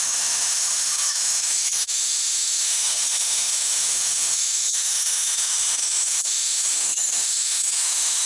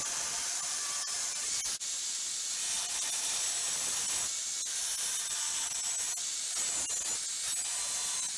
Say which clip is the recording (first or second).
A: second